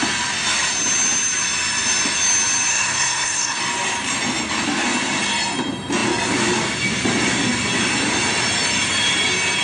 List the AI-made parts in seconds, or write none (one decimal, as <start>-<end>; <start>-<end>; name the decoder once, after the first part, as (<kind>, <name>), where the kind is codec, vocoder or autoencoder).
2.7-3.6 (codec, SNAC)